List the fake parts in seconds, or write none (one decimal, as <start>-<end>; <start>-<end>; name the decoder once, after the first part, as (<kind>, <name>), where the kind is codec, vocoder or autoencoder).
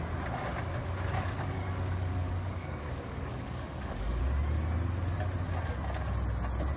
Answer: 1.1-4.2 (codec, DAC)